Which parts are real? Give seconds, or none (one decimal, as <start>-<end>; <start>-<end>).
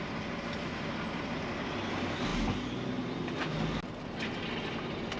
0.0-5.2